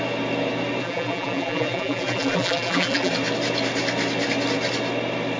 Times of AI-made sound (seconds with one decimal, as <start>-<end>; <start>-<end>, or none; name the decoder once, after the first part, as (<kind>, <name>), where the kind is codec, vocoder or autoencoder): 0.8-3.1 (vocoder, BigVGAN v2)